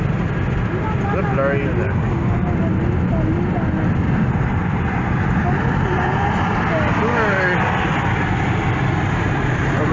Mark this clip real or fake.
real